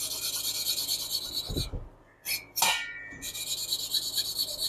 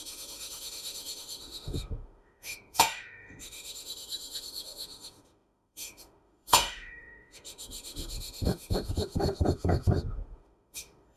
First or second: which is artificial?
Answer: second